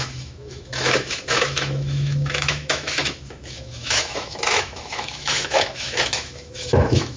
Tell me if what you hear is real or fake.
fake